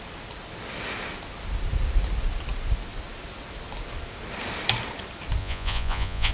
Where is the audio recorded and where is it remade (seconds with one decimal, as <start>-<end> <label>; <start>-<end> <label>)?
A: 0.0-5.4 recorded; 5.4-6.3 remade